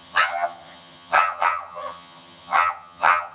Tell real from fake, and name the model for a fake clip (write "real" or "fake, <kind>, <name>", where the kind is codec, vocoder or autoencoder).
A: fake, vocoder, HiFi-GAN